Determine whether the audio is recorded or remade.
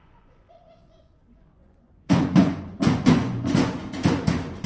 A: remade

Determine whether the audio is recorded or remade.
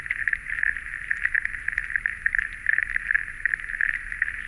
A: recorded